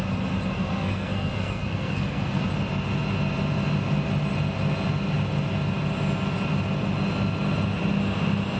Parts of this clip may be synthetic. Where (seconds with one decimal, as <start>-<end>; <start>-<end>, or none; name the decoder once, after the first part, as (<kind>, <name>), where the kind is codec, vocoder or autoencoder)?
0.5-2.4 (codec, SNAC)